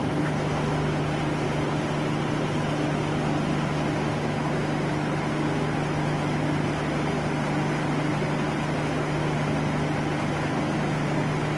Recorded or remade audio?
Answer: recorded